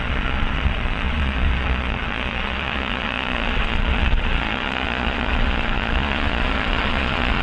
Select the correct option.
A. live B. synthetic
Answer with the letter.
B